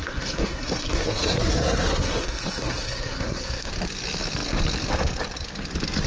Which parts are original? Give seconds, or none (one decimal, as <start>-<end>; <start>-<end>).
3.7-6.1